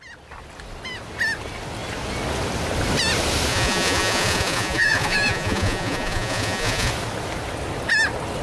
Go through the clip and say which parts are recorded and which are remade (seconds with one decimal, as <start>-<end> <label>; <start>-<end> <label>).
0.0-3.5 recorded; 3.5-6.9 remade; 6.9-8.4 recorded